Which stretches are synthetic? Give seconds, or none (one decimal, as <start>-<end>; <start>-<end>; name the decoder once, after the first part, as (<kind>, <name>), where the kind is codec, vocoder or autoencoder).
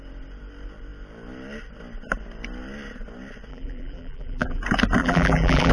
3.5-4.6 (vocoder, BigVGAN v2); 5.0-5.7